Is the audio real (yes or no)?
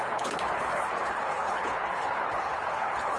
no